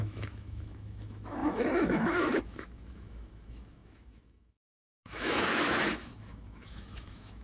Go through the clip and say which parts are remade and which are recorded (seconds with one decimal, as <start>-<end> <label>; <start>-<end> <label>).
0.0-7.4 remade